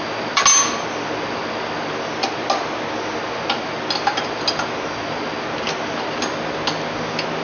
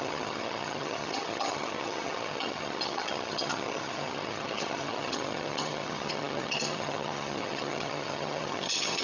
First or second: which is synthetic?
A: second